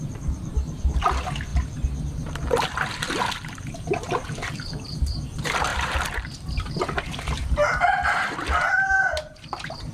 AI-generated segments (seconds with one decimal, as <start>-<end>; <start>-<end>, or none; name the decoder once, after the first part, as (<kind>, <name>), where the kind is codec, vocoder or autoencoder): 0.0-9.9 (vocoder, BigVGAN v2)